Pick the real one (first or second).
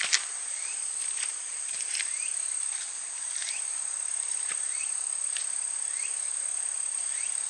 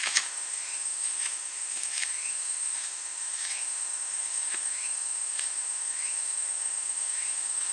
first